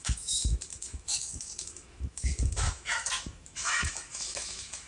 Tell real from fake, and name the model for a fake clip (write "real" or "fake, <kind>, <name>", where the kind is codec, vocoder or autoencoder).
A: fake, autoencoder, DAC-VAE